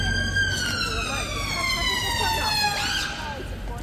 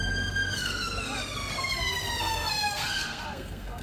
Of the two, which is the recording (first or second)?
first